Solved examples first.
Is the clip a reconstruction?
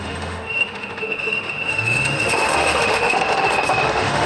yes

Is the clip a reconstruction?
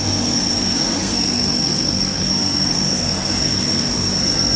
yes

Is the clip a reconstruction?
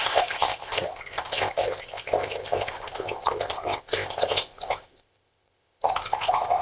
yes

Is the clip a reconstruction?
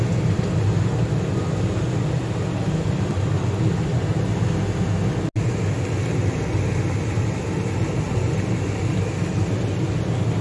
no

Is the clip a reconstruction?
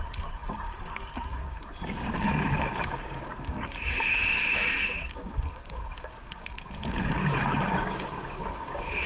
yes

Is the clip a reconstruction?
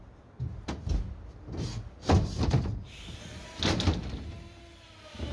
no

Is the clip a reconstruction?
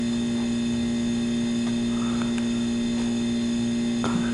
no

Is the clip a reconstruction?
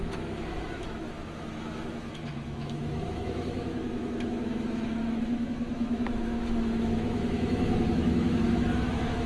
yes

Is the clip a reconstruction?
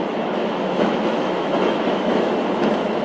yes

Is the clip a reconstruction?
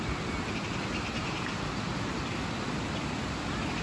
no